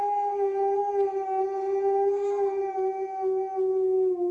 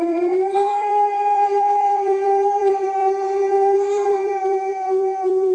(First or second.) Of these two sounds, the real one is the first